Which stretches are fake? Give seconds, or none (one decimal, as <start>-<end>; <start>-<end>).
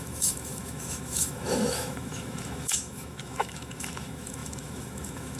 0.0-5.4